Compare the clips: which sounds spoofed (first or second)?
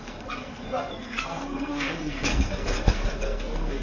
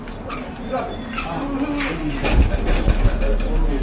first